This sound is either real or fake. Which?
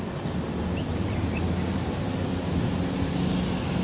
real